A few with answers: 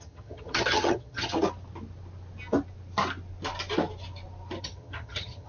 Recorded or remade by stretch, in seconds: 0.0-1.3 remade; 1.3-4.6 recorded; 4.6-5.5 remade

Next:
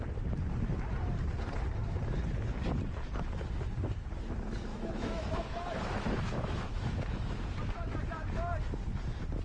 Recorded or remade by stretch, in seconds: 0.0-4.7 recorded; 4.7-7.0 remade; 7.0-9.4 recorded

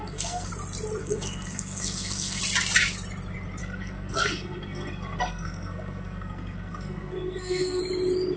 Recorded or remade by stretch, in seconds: 0.0-0.5 remade; 0.5-1.0 recorded; 1.0-2.4 remade; 2.4-3.6 recorded; 3.6-7.8 remade; 7.8-8.4 recorded

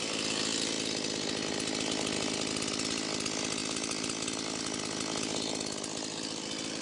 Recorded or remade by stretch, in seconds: 0.0-6.8 recorded

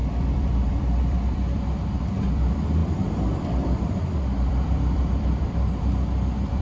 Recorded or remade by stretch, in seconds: 0.0-6.6 remade